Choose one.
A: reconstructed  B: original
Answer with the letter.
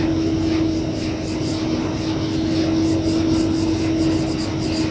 B